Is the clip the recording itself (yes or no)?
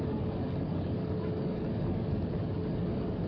no